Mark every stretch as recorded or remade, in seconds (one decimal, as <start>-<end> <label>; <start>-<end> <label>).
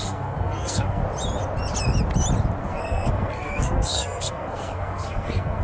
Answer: 0.0-1.0 remade; 1.0-2.6 recorded; 2.6-5.6 remade